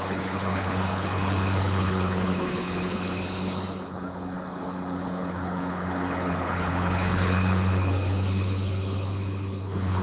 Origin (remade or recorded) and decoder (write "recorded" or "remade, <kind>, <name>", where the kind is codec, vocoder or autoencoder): remade, codec, HILCodec